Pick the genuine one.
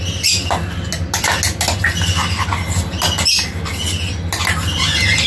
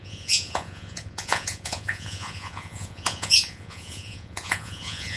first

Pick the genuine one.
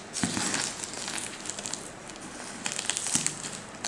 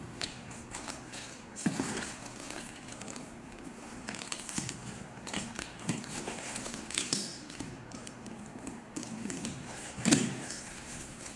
first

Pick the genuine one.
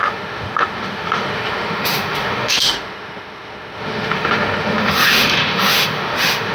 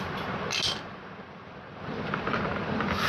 second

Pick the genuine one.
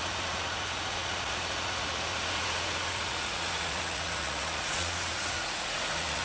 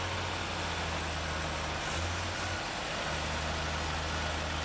second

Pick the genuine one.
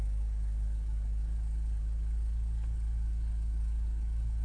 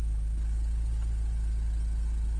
second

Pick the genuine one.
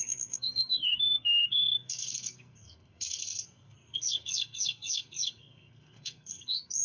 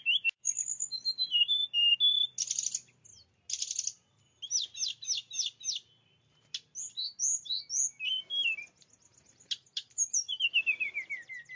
second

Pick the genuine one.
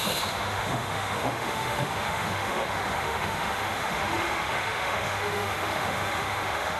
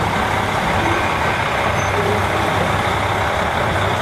second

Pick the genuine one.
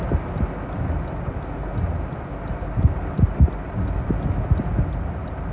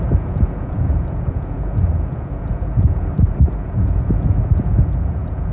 first